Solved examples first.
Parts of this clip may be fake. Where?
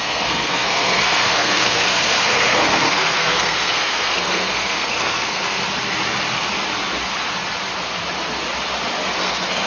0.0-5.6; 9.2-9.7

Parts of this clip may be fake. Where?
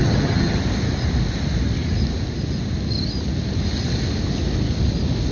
0.0-0.6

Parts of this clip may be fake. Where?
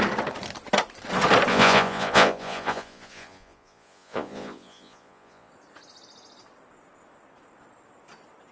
1.5-5.5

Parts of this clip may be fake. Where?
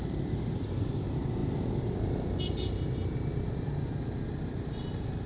none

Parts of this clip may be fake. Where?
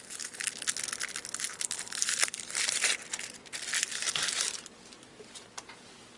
1.5-5.2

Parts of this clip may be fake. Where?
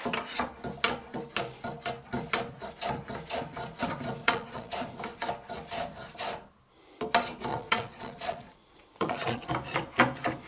4.2-4.7; 7.5-9.5